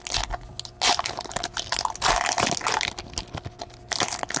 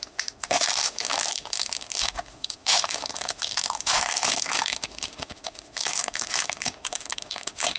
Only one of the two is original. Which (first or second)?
first